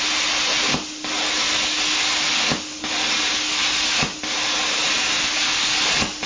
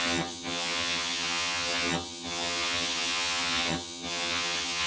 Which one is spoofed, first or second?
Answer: second